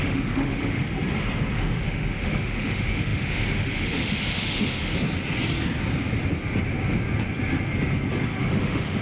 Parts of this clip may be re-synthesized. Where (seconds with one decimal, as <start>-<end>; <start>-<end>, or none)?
0.0-0.8; 1.5-4.9; 8.4-9.0